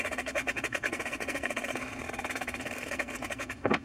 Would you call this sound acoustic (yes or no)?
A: no